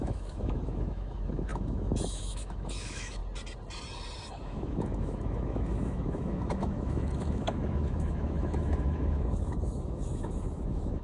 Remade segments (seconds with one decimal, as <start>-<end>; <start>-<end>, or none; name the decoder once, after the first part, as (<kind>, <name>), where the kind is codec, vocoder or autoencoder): 0.0-3.2 (autoencoder, DAC-VAE); 4.4-11.0